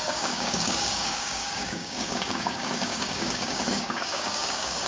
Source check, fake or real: fake